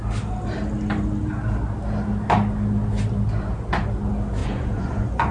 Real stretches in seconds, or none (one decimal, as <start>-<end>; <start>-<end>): 0.0-4.4